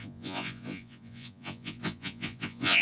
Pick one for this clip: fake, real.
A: fake